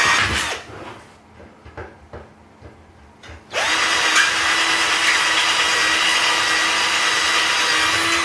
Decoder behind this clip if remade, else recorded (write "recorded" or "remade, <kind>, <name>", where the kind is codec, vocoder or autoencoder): recorded